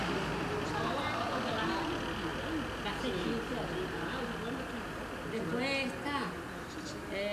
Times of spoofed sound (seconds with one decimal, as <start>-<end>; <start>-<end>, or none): none